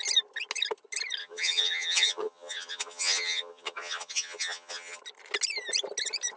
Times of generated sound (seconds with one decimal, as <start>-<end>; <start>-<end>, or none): 1.2-5.0